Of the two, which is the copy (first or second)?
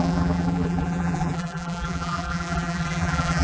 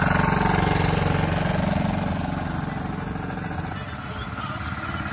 first